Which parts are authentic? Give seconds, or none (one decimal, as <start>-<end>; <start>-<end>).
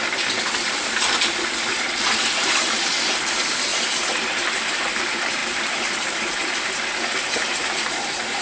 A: 3.7-4.4